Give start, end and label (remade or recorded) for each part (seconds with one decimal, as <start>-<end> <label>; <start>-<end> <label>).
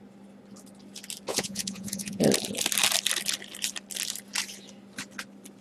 0.0-1.3 recorded; 1.3-2.2 remade; 2.2-5.6 recorded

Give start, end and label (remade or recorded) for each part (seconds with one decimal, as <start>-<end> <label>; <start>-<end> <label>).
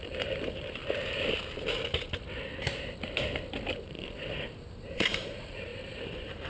0.0-0.8 remade; 0.8-3.8 recorded; 3.8-6.5 remade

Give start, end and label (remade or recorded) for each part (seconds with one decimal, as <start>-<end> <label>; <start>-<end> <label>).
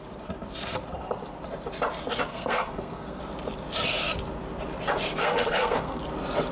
0.0-2.3 recorded; 2.3-3.2 remade; 3.2-5.2 recorded; 5.2-6.0 remade; 6.0-6.5 recorded